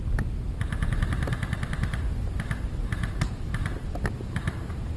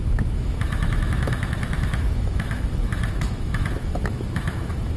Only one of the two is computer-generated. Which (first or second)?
second